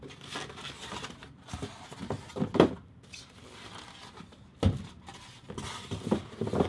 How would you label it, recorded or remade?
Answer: recorded